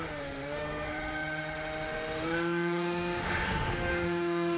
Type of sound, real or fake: fake